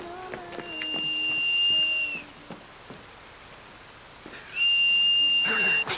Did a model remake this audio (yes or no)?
no